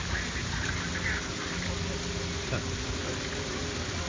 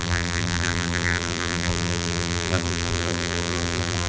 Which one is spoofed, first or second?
second